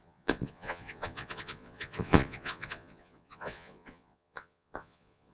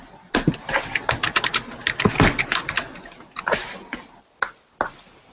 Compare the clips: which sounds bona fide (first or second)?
second